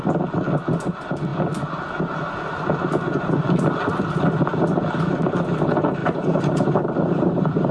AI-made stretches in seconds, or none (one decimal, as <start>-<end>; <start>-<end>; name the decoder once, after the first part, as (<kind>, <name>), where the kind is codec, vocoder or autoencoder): 6.0-7.7 (vocoder, BigVGAN v2)